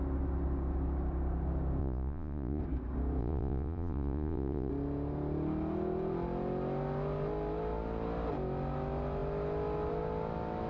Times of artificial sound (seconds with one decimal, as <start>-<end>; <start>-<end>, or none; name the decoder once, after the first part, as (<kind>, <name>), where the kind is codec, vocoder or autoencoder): 1.8-2.6 (vocoder, Vocos); 3.2-4.7